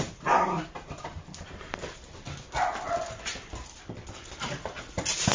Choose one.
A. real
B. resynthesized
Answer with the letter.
A